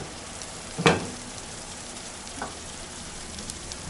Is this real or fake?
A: fake